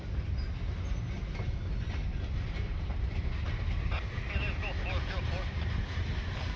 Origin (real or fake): real